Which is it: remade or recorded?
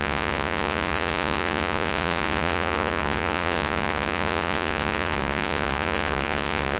remade